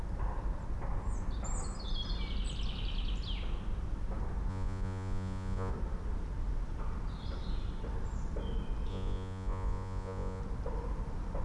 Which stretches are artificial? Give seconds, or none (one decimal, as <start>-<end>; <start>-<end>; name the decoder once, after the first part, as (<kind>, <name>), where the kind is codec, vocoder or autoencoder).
4.5-5.7 (vocoder, Vocos); 8.9-10.4

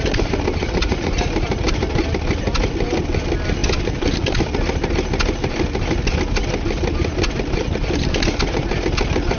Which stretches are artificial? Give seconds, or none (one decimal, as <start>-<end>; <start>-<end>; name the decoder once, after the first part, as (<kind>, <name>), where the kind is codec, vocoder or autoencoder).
0.6-1.1 (vocoder, Vocos)

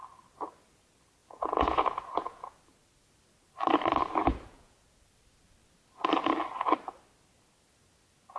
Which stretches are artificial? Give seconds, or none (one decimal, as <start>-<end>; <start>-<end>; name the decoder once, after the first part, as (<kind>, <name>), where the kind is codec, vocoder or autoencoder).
1.2-2.6 (vocoder, Vocos); 4.2-4.8

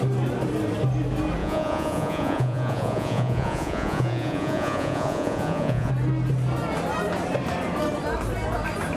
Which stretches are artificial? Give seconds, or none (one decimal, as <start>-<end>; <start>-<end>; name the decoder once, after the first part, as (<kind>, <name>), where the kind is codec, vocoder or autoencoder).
1.4-5.9 (vocoder, Vocos)

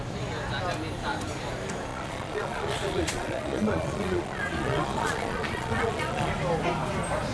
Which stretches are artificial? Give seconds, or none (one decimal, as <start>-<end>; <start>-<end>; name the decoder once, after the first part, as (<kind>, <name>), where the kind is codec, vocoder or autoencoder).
1.9-6.3 (vocoder, Vocos)

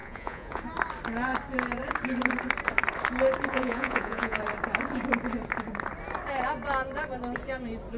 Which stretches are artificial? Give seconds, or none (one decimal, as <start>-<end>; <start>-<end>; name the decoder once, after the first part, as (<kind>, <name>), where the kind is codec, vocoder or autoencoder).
0.0-0.6 (vocoder, Vocos); 3.5-4.4

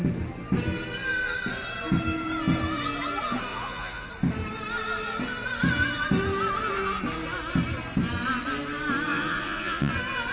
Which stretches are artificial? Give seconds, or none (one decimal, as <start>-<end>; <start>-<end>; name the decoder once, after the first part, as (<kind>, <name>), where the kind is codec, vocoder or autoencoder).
3.5-4.1 (vocoder, Vocos); 9.1-9.9

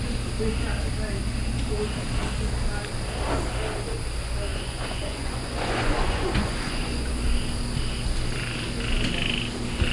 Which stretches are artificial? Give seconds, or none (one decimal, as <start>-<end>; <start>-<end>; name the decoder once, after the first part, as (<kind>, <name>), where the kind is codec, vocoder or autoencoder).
4.5-7.1 (vocoder, Vocos)